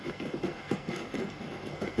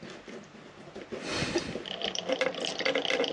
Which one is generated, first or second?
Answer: first